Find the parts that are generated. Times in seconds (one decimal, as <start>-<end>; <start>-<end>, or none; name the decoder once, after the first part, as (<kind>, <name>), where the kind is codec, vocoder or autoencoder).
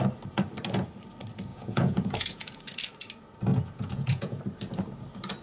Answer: 1.5-2.6 (vocoder, Vocos); 3.5-4.4